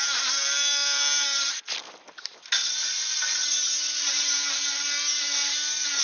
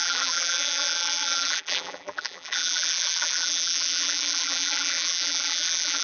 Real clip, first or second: first